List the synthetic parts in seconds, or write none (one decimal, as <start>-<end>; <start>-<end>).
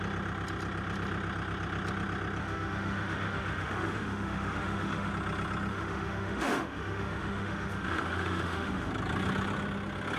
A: 2.4-5.1; 5.7-8.9